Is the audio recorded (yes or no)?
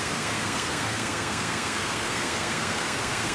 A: no